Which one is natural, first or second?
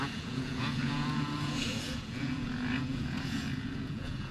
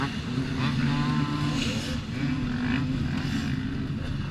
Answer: second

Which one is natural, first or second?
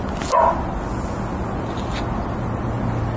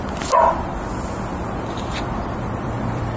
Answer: first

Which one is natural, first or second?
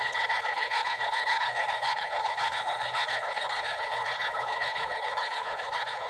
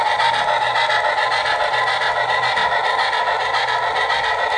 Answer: second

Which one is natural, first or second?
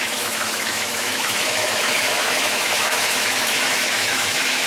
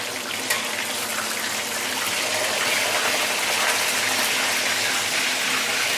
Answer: second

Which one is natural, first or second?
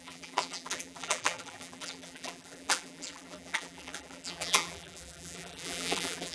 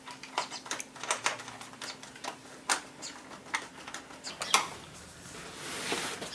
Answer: second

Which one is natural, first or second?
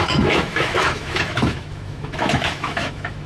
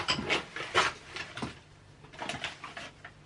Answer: second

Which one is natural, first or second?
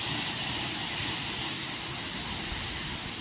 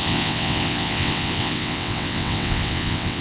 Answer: first